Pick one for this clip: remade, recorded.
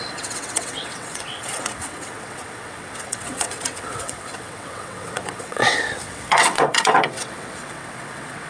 remade